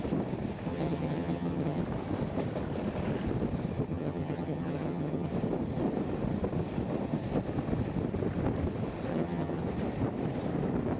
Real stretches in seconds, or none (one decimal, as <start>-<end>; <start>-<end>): 0.0-0.7; 1.8-3.9; 5.3-9.1; 9.6-11.0